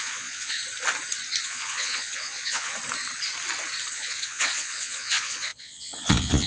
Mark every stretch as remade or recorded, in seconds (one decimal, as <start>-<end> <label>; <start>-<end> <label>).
0.0-0.6 remade; 0.6-1.4 recorded; 1.4-2.7 remade; 2.7-3.9 recorded; 3.9-6.5 remade